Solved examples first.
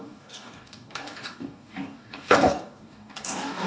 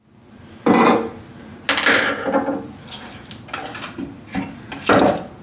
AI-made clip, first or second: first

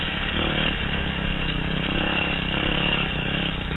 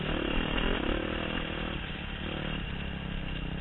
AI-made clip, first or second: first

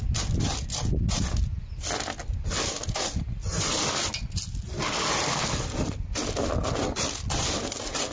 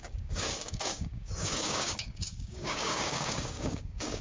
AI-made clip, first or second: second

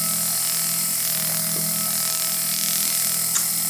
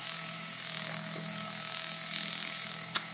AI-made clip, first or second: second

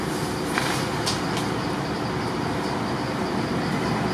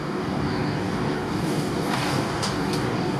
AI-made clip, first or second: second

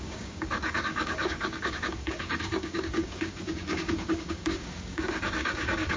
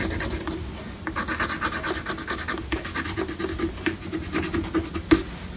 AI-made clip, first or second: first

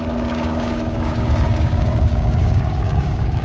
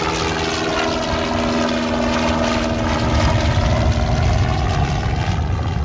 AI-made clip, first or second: first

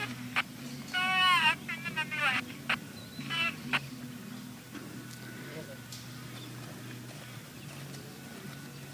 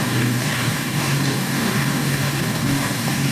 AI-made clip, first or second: second